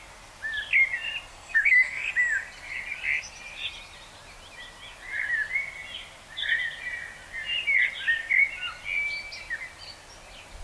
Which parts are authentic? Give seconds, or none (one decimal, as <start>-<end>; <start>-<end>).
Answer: 0.0-1.3; 2.1-10.6